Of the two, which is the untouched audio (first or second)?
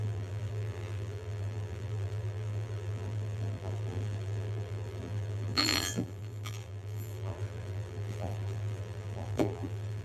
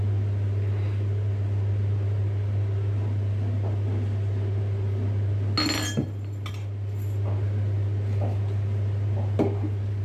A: second